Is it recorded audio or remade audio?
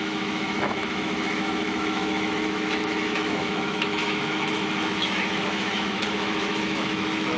remade